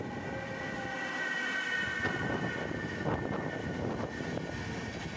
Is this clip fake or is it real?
real